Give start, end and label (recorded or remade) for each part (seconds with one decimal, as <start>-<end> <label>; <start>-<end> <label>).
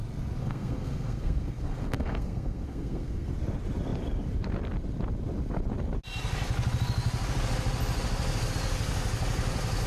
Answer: 0.0-0.4 recorded; 0.4-3.3 remade; 3.3-9.9 recorded